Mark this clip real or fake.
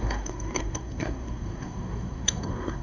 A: fake